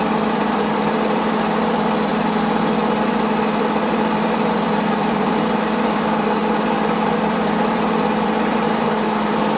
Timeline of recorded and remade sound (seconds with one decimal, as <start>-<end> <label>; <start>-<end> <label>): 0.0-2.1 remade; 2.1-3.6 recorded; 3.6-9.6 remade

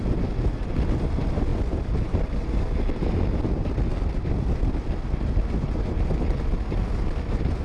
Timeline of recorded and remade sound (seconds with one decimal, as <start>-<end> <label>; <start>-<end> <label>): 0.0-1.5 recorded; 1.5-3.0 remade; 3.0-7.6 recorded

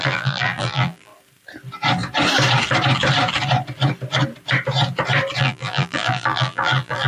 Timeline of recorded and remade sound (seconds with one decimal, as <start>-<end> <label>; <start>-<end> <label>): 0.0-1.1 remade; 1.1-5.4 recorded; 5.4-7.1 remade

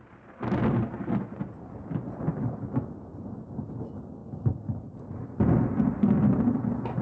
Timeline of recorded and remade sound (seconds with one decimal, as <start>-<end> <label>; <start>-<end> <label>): 0.0-3.1 recorded; 3.1-3.8 remade; 3.8-7.0 recorded